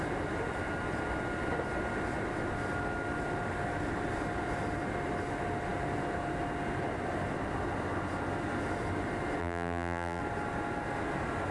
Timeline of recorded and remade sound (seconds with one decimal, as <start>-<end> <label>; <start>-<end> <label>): 0.0-9.4 recorded; 9.4-10.2 remade; 10.2-11.5 recorded